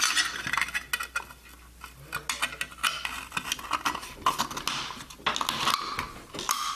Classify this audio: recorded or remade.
recorded